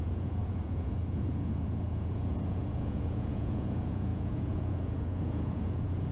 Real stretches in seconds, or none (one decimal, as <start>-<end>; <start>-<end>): none